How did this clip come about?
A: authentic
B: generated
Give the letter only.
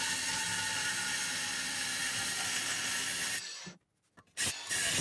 A